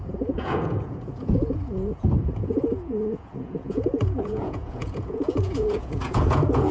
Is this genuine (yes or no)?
no